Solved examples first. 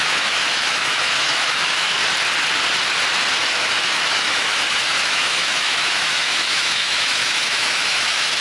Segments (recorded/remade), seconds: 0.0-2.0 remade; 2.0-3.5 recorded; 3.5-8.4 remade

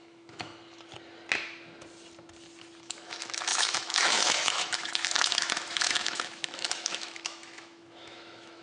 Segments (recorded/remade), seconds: 0.0-0.5 remade; 0.5-2.8 recorded; 2.8-8.6 remade